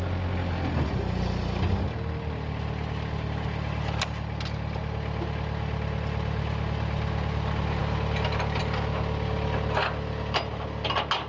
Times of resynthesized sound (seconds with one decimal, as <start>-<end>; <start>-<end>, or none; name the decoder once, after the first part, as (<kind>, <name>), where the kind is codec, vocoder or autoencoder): none